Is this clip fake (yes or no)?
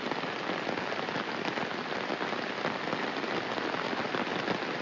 no